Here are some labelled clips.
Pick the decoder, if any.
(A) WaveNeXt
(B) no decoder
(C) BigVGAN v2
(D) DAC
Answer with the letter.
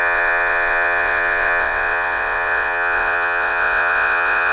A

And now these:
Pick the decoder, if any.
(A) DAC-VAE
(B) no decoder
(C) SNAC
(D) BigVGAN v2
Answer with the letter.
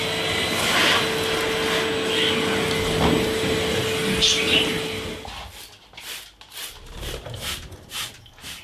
B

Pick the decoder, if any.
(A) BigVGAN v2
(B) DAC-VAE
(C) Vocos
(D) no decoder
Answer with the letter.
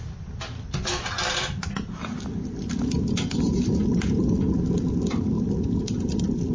D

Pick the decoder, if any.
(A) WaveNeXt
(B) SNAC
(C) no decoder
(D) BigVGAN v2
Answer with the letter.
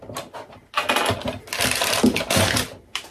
C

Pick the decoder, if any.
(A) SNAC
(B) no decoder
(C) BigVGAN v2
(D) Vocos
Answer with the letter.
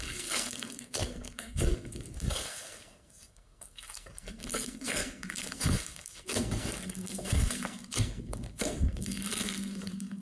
A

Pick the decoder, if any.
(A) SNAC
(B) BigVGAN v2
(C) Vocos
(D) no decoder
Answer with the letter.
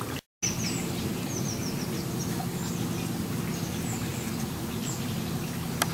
D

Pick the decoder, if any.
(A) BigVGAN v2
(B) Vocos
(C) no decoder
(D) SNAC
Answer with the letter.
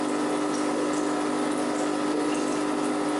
C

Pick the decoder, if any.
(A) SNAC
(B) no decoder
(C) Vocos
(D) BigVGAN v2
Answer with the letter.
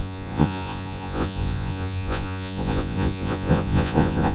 C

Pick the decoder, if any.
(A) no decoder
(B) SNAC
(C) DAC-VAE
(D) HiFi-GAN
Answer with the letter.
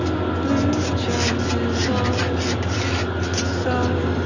A